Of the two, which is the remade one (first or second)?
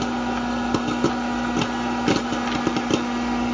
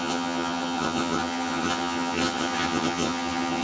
second